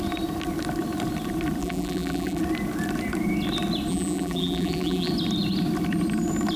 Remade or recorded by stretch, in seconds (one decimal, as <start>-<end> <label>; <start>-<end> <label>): 0.0-1.6 recorded; 1.6-2.4 remade; 2.4-3.9 recorded; 3.9-5.1 remade; 5.1-6.6 recorded